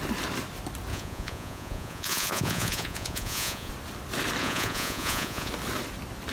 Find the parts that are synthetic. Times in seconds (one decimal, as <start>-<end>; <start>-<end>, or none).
0.9-3.7; 4.4-5.5